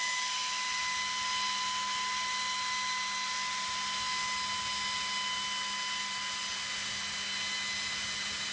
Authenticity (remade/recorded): recorded